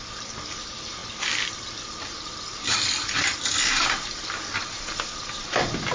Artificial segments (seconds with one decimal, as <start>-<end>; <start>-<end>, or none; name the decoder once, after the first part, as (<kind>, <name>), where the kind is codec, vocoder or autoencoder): 0.0-5.9 (vocoder, BigVGAN v2)